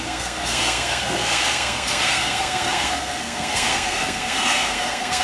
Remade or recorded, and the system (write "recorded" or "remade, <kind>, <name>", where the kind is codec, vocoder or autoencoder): remade, codec, SNAC